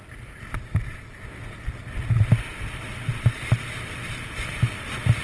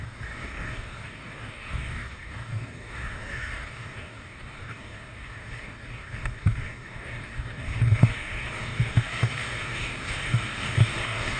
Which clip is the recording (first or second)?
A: first